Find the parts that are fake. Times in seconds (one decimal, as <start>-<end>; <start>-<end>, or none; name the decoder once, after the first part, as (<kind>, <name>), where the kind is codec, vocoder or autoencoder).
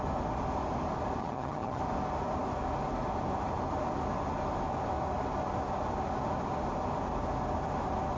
1.2-1.8 (vocoder, HiFi-GAN)